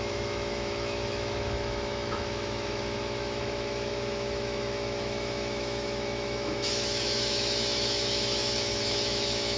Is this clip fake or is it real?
fake